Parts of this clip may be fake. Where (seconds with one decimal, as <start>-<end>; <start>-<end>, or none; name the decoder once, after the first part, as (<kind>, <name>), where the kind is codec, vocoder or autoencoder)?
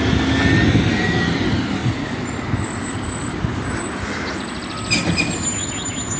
none